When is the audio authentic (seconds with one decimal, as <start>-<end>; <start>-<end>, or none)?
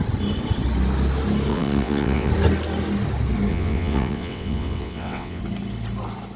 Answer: 0.0-1.5; 2.3-3.5; 5.4-6.4